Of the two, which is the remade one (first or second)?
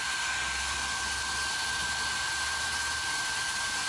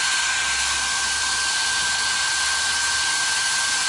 first